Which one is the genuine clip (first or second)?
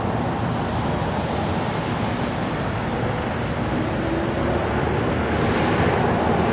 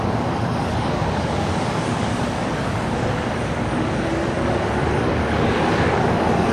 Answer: first